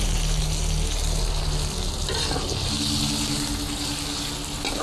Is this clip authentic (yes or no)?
yes